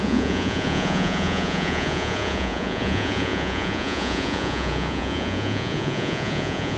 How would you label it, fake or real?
fake